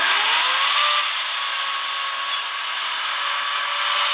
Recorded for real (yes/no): yes